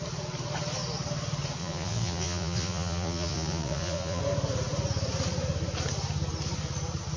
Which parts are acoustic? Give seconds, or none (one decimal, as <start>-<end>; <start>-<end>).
0.0-1.6; 4.2-7.2